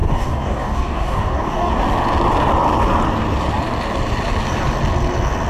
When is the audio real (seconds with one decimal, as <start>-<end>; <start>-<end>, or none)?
1.7-5.5